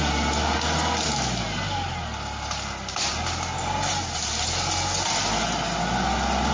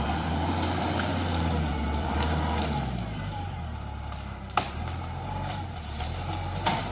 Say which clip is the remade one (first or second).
second